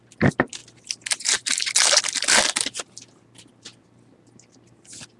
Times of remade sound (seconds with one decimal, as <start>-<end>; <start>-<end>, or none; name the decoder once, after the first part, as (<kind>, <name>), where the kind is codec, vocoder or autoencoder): none